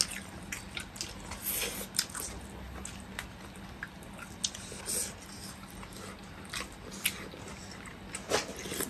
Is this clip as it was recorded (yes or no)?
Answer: yes